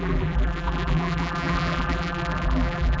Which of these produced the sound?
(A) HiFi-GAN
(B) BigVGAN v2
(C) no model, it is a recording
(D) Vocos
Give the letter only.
B